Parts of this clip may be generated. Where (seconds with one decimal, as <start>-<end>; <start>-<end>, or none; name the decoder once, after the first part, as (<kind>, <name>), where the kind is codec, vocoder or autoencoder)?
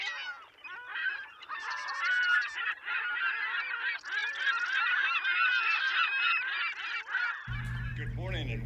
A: 0.9-2.9 (vocoder, BigVGAN v2)